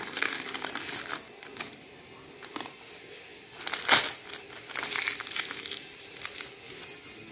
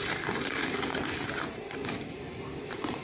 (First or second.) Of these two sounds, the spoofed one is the second